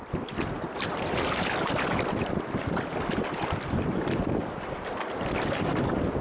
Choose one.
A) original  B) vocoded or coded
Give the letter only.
B